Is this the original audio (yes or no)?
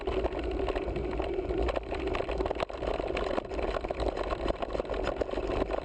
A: yes